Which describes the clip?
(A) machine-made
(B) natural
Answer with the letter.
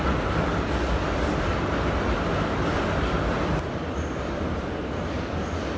B